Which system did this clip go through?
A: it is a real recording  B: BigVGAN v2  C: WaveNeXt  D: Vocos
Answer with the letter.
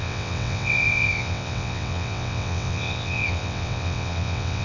C